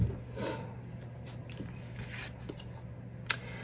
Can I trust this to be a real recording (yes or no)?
yes